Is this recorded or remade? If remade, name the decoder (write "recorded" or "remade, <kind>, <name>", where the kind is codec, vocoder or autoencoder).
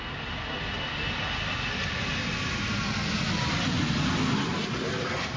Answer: recorded